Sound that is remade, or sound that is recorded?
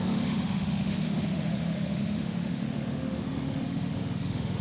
remade